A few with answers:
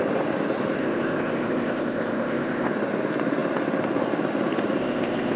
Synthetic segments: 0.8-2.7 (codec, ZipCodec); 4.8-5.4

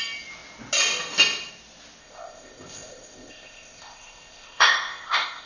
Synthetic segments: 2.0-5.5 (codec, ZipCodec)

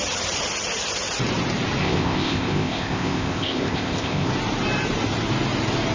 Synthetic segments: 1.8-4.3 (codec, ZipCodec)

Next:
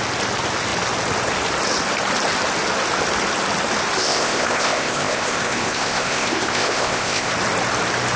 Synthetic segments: 4.0-7.3 (codec, ZipCodec)